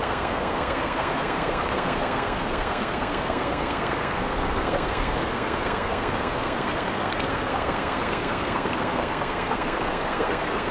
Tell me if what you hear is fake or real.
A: fake